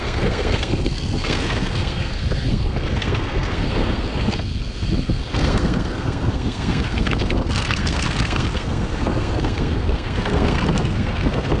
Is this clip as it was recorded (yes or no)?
no